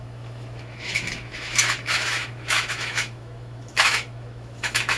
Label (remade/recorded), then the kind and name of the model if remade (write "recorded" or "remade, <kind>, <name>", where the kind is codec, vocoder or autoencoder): remade, autoencoder, DAC-VAE